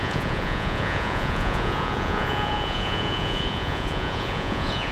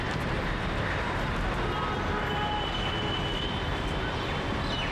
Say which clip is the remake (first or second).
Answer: first